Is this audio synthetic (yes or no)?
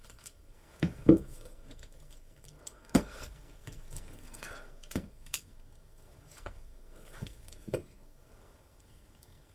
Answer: yes